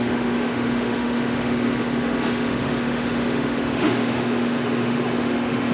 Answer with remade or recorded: remade